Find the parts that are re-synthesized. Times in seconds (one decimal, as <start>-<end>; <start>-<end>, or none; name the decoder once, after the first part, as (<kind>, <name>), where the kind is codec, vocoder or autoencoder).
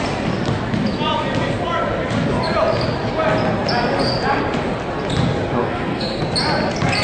5.6-6.2 (codec, SNAC)